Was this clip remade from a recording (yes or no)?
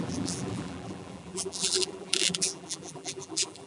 yes